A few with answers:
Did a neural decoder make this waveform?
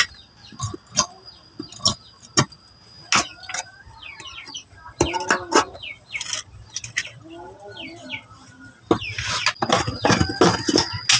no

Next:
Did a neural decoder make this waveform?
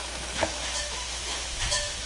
yes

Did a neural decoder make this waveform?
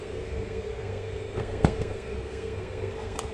yes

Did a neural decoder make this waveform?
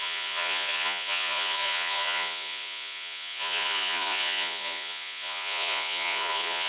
yes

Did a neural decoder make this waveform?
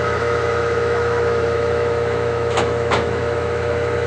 yes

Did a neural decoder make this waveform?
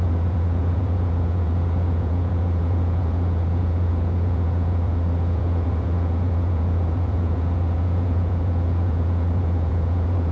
yes